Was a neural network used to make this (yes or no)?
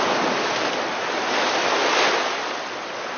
no